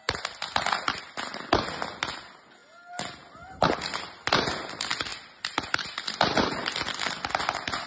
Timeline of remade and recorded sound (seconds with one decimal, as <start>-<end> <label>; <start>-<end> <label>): 0.0-5.1 recorded; 5.1-6.6 remade; 6.6-7.9 recorded